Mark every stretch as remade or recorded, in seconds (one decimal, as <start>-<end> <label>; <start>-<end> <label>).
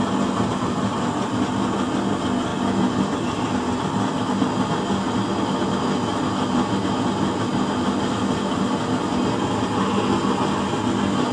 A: 0.0-11.3 recorded